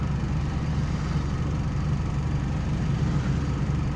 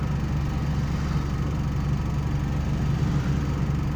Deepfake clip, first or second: first